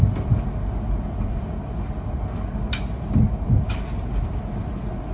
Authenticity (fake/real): real